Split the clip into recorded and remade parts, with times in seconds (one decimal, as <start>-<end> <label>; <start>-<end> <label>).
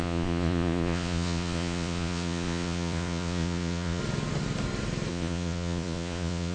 0.0-4.0 remade; 4.0-5.1 recorded; 5.1-6.5 remade